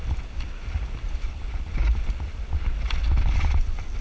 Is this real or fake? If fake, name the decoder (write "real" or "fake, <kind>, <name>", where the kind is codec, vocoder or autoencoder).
real